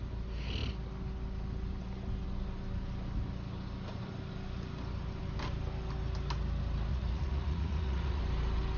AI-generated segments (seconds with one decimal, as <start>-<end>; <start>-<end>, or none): 6.9-8.2